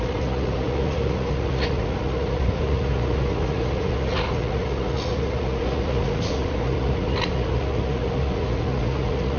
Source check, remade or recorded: remade